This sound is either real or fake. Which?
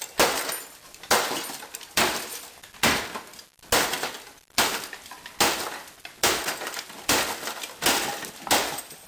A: real